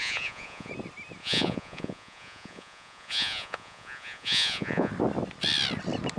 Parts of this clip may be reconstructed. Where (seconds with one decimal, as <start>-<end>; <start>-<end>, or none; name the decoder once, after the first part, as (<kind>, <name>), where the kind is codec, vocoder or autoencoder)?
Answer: 0.0-0.7 (vocoder, Vocos); 1.2-4.9